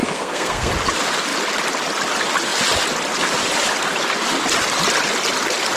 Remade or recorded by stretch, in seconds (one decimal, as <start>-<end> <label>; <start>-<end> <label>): 0.0-0.7 remade; 0.7-5.8 recorded